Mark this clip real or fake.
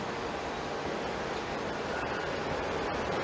real